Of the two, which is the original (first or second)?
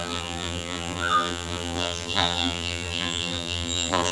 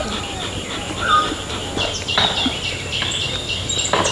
second